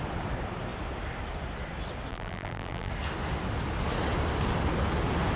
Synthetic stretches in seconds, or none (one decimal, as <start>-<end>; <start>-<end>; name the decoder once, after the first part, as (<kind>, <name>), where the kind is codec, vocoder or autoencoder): 2.1-2.9 (vocoder, BigVGAN v2)